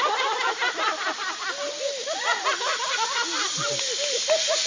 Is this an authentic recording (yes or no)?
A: yes